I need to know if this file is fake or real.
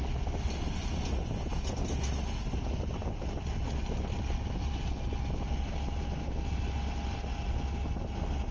real